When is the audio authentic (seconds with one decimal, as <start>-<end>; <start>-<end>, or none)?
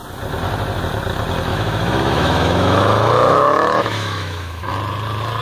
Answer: 0.0-1.5; 4.7-5.4